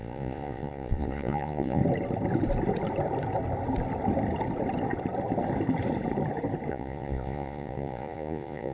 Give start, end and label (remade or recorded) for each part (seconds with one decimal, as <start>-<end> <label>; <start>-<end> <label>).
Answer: 0.0-1.8 remade; 1.8-6.7 recorded; 6.7-8.7 remade